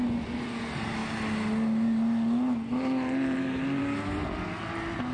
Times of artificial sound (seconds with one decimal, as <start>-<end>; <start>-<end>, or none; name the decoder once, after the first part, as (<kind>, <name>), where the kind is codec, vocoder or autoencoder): none